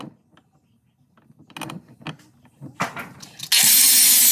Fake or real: real